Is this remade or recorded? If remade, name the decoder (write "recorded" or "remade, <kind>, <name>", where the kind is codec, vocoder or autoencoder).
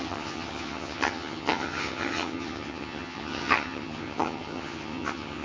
remade, vocoder, HiFi-GAN